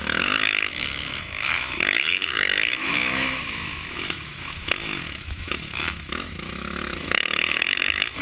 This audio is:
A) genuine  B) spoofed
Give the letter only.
B